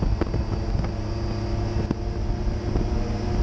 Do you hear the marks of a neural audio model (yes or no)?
no